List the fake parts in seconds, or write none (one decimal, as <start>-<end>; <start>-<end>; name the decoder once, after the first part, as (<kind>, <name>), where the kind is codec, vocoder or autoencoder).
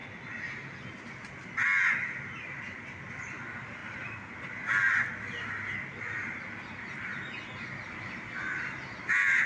none